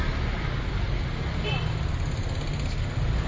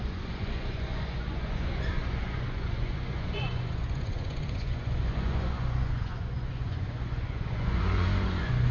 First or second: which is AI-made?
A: second